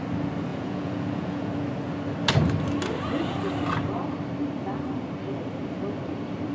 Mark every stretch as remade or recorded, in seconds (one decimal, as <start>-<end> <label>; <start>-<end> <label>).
0.0-0.5 recorded; 0.5-1.5 remade; 1.5-6.5 recorded